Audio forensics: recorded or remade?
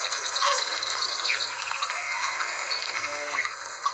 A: remade